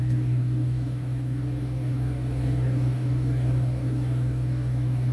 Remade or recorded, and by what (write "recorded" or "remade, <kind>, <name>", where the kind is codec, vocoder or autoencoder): remade, codec, DAC